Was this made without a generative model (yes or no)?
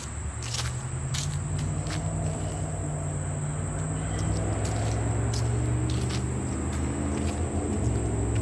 yes